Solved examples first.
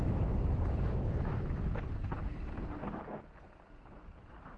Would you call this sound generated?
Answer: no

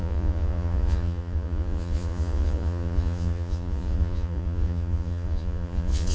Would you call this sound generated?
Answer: yes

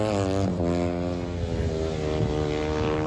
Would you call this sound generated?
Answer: no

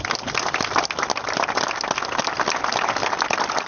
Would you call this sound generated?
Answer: no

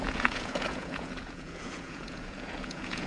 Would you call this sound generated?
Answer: yes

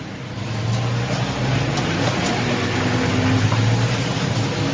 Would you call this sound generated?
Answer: no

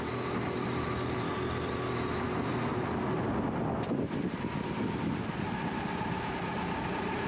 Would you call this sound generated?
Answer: no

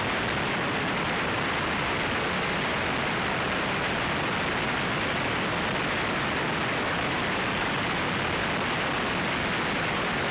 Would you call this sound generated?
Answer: no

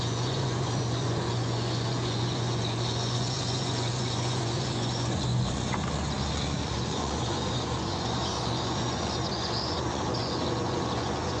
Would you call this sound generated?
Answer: yes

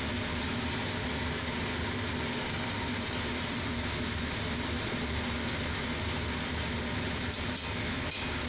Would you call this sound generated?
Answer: no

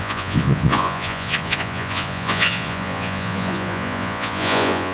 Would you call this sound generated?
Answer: yes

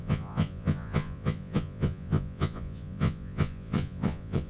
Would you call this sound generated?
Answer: yes